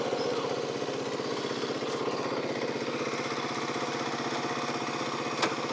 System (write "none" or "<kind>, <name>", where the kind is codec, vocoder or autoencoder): none